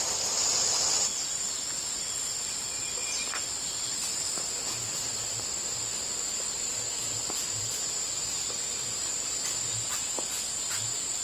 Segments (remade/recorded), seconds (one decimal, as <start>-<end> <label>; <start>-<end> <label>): 0.0-11.2 recorded